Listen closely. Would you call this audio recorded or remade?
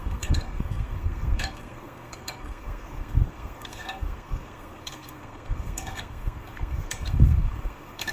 remade